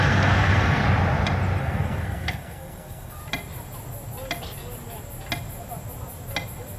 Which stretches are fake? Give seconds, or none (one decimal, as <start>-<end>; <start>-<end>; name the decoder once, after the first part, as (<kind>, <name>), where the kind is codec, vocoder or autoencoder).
0.0-0.8 (codec, SNAC); 1.6-3.2